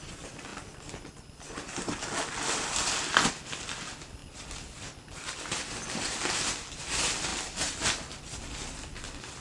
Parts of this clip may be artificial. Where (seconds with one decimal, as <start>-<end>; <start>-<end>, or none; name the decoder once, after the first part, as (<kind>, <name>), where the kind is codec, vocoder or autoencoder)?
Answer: none